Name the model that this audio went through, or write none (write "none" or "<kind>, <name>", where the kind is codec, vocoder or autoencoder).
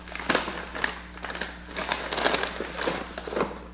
none